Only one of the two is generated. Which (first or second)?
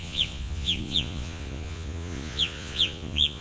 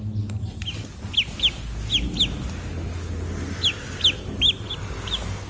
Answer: first